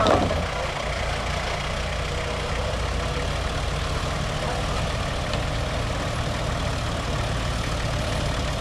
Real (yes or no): yes